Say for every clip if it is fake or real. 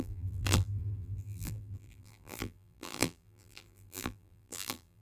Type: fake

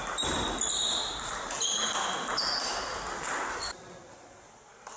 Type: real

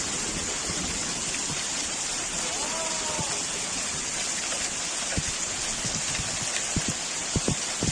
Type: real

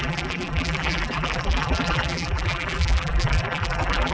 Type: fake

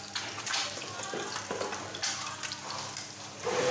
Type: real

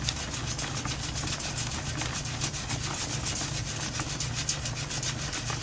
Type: real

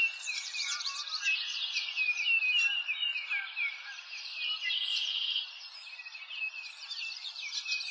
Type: fake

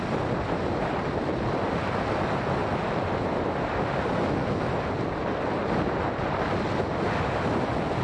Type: real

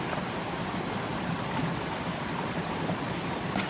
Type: fake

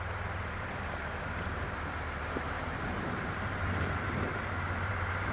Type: fake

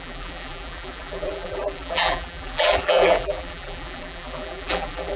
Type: fake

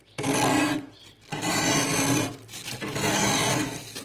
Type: real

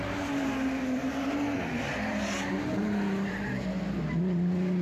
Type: real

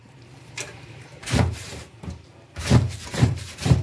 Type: fake